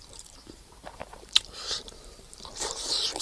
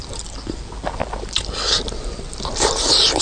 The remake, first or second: first